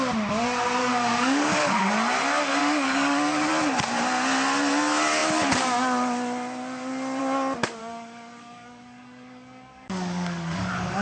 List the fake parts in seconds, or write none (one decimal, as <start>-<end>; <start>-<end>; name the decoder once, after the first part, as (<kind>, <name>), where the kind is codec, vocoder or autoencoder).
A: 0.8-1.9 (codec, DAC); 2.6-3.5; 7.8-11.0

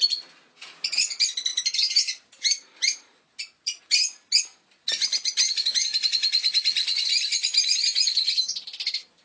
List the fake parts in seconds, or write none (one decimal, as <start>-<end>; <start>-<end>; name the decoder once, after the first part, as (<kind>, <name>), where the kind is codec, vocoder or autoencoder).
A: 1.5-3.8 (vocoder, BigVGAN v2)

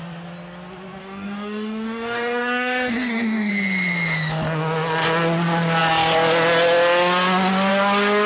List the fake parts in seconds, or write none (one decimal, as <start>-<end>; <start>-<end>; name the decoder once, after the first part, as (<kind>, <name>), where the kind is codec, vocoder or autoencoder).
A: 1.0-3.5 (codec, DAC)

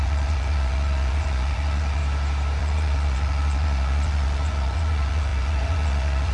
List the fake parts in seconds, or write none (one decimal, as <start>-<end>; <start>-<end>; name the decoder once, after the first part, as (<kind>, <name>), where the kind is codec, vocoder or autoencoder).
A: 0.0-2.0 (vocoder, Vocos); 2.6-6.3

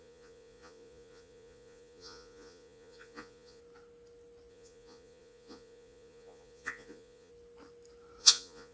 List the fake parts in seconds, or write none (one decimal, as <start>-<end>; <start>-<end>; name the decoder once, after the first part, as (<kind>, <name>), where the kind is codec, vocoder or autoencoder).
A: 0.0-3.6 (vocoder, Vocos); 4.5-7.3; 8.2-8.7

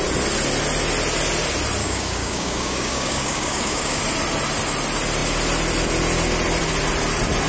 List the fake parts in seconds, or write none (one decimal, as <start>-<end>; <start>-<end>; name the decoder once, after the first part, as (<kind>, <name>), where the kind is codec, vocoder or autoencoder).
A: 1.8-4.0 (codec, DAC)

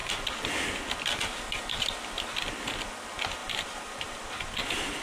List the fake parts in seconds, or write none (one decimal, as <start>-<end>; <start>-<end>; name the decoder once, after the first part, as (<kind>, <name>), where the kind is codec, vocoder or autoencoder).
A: 3.4-4.4 (vocoder, BigVGAN v2)